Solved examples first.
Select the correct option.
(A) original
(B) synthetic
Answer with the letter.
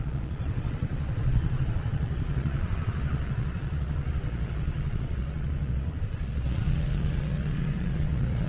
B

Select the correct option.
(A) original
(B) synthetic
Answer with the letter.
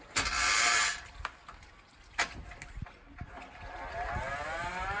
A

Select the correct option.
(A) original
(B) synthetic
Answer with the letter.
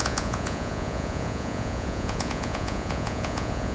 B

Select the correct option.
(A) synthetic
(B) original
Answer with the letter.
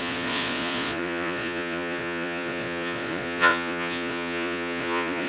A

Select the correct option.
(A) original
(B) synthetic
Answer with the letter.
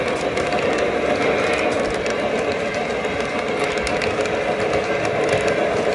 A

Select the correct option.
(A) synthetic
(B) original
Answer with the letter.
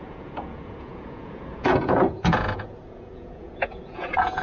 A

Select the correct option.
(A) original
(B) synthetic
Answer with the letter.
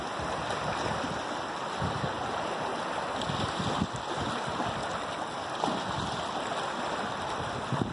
A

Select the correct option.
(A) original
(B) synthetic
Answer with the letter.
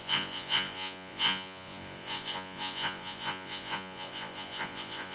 B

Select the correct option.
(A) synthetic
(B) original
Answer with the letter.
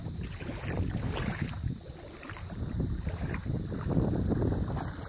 B